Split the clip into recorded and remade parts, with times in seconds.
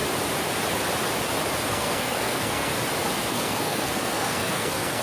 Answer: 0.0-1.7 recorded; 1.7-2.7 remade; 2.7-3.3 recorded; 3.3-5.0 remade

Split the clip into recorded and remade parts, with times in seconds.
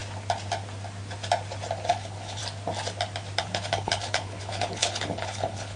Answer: 0.0-1.9 recorded; 1.9-2.4 remade; 2.4-3.4 recorded; 3.4-5.8 remade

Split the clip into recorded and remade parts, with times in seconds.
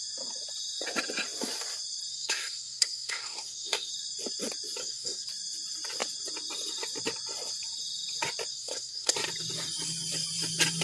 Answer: 0.0-2.1 recorded; 2.1-3.9 remade; 3.9-4.8 recorded; 4.8-5.3 remade; 5.3-8.5 recorded; 8.5-9.1 remade; 9.1-10.8 recorded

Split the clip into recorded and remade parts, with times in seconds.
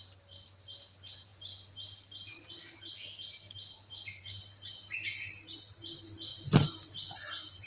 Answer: 0.0-7.7 recorded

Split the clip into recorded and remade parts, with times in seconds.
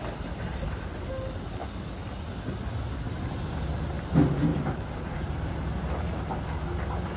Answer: 0.0-4.5 recorded; 4.5-6.3 remade; 6.3-7.2 recorded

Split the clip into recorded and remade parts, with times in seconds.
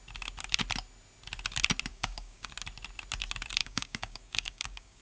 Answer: 0.0-1.9 recorded; 1.9-2.5 remade; 2.5-3.6 recorded; 3.6-5.0 remade